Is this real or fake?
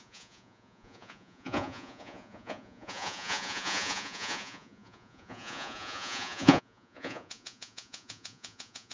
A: fake